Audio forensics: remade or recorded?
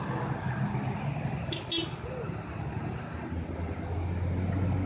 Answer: recorded